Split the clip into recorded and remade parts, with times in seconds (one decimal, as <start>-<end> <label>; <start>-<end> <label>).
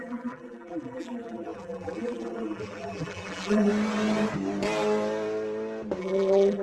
0.0-3.7 remade; 3.7-6.0 recorded; 6.0-6.6 remade